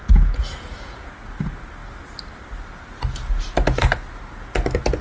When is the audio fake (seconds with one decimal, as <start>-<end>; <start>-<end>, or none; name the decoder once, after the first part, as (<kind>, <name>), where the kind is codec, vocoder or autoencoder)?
0.0-1.1 (vocoder, Vocos)